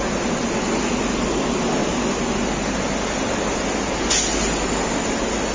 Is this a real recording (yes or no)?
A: yes